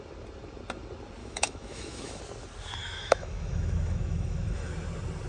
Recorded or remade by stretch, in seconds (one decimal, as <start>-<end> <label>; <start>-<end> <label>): 0.0-1.2 recorded; 1.2-2.2 remade; 2.2-2.8 recorded; 2.8-4.7 remade; 4.7-5.3 recorded